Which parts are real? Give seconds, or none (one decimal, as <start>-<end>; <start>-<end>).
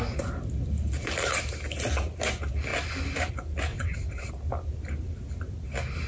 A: 0.0-3.7; 4.3-6.1